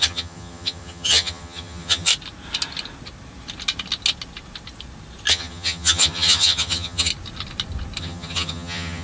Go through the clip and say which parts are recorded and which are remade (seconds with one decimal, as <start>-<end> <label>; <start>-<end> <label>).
0.0-2.1 remade; 2.1-5.3 recorded; 5.3-7.1 remade; 7.1-8.0 recorded; 8.0-9.0 remade